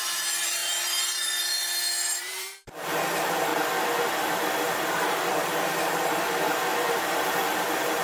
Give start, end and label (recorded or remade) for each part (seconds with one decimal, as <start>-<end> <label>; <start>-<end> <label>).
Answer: 0.0-3.5 remade; 3.5-4.6 recorded; 4.6-8.0 remade